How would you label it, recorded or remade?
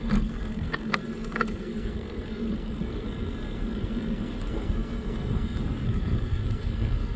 remade